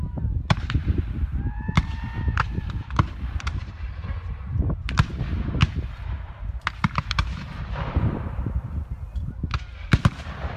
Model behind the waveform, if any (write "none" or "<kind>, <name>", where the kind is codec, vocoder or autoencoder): vocoder, BigVGAN v2